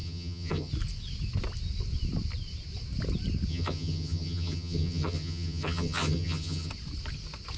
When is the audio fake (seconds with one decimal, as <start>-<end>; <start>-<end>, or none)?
0.0-0.7; 3.5-6.7